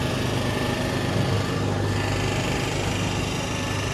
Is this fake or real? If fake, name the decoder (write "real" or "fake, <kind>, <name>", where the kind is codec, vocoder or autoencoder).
real